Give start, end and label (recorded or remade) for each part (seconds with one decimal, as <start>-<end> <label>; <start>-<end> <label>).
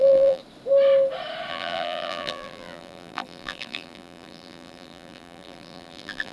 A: 0.0-0.4 remade; 0.4-1.5 recorded; 1.5-6.3 remade